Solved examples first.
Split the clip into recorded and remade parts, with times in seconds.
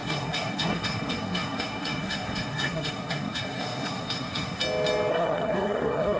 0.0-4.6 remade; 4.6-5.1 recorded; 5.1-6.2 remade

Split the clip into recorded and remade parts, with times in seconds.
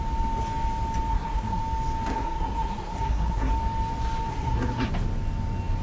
0.0-1.1 recorded; 1.1-1.6 remade; 1.6-2.1 recorded; 2.1-3.5 remade; 3.5-4.3 recorded; 4.3-4.9 remade; 4.9-5.8 recorded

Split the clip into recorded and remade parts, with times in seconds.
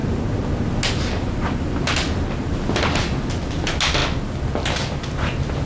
0.0-5.7 recorded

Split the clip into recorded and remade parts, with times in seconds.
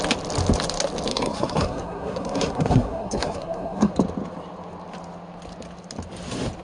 0.0-1.1 recorded; 1.1-3.9 remade; 3.9-6.6 recorded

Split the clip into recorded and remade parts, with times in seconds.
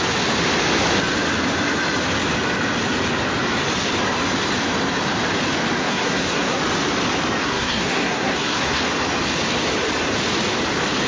0.0-5.8 recorded; 5.8-6.6 remade; 6.6-7.4 recorded; 7.4-8.8 remade; 8.8-11.1 recorded